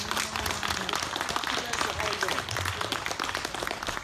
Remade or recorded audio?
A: recorded